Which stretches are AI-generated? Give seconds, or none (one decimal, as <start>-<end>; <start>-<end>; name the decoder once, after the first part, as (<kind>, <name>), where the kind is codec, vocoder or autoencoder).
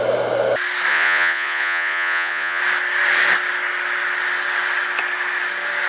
0.9-2.6 (vocoder, Vocos)